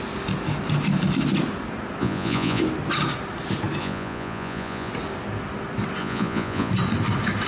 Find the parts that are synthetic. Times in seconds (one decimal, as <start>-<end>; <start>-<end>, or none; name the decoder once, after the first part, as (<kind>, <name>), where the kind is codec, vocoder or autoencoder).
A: 2.0-2.6 (vocoder, Vocos); 3.8-4.9; 6.0-6.7